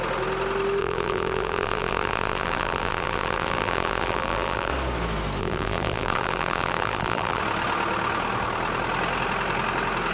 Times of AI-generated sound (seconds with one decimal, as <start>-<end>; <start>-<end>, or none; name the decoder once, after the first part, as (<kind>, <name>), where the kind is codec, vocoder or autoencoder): 0.8-4.7 (vocoder, BigVGAN v2); 5.4-7.4